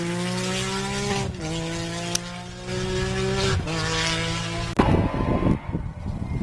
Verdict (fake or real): real